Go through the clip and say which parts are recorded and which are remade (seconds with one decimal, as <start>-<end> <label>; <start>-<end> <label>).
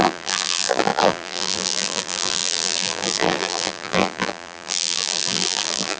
0.0-6.0 remade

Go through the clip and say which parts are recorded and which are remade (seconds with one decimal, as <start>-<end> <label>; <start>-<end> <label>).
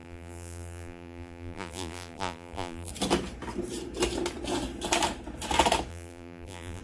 0.0-2.9 remade; 2.9-5.9 recorded; 5.9-6.8 remade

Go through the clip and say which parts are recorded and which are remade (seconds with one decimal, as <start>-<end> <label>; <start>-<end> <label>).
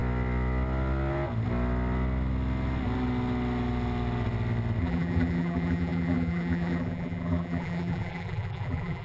0.0-4.8 recorded; 4.8-9.0 remade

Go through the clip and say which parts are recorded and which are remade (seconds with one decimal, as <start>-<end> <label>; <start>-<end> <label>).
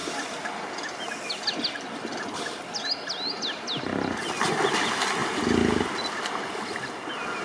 0.0-7.4 recorded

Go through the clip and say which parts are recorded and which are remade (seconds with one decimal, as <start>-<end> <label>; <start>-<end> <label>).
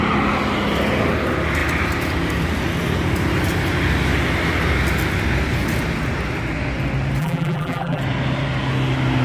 0.0-7.2 recorded; 7.2-8.0 remade; 8.0-9.2 recorded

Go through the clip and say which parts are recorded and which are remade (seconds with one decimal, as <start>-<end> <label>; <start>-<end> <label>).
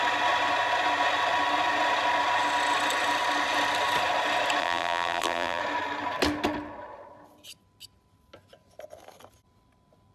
0.0-4.6 recorded; 4.6-5.6 remade; 5.6-10.1 recorded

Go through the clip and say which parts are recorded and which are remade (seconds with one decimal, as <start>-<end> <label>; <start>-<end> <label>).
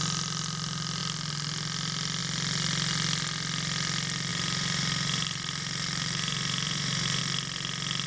0.0-4.3 recorded; 4.3-7.2 remade; 7.2-8.1 recorded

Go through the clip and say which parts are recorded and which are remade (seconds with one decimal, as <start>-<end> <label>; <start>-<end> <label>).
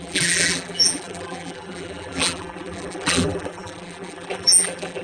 0.0-5.0 remade